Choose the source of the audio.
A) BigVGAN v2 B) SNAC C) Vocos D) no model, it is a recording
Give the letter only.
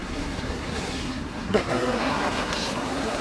B